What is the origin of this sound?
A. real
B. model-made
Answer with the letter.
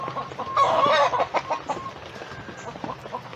A